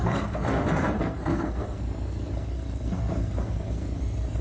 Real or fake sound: fake